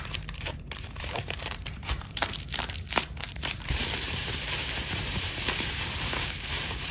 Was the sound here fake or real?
fake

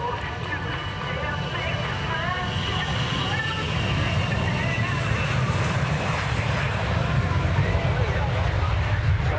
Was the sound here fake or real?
real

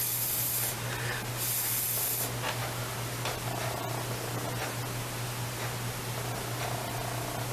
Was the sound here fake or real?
real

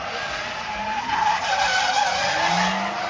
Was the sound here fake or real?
real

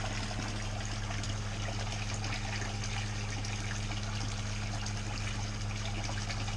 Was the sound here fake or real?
real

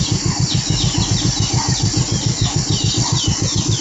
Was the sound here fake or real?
real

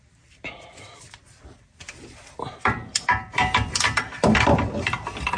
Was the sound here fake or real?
fake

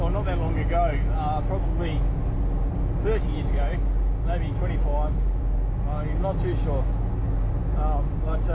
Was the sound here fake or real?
real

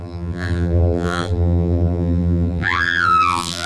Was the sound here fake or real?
fake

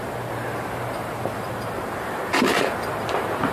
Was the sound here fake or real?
fake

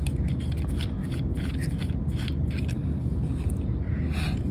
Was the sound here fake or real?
real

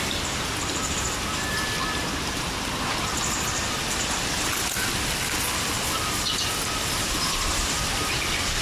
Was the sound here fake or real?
real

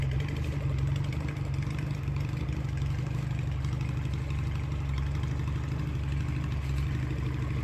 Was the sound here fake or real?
real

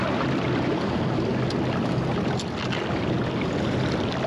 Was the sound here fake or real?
real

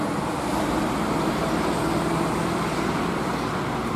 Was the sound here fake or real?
real